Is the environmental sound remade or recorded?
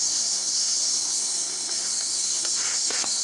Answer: remade